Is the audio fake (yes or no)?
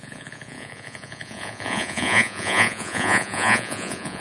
yes